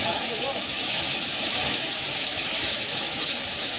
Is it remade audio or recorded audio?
remade